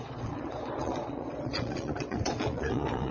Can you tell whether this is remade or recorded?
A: remade